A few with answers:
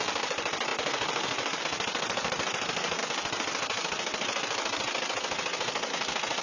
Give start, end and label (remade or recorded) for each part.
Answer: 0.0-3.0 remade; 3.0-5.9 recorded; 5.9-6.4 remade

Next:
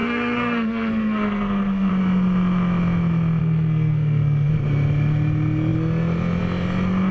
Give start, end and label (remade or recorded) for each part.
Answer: 0.0-1.9 remade; 1.9-3.4 recorded; 3.4-4.5 remade; 4.5-7.1 recorded

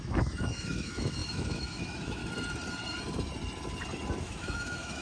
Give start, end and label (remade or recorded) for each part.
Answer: 0.0-2.2 remade; 2.2-4.2 recorded; 4.2-5.0 remade